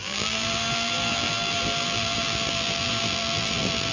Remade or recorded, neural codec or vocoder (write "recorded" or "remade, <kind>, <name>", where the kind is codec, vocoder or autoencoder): remade, vocoder, BigVGAN v2